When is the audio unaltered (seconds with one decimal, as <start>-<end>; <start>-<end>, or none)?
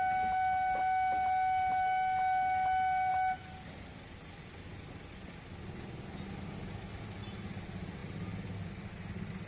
0.0-9.5